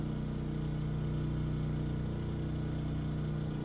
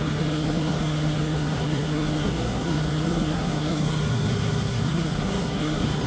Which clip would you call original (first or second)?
first